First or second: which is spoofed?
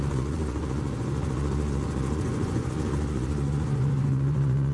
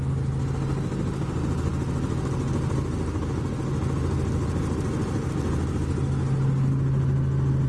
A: first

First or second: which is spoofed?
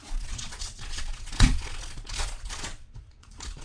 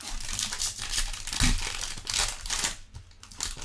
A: first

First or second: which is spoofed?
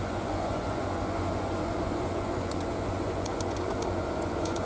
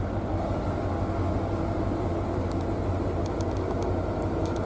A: first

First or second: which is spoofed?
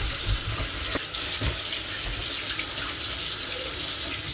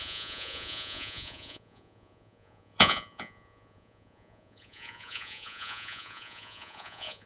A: second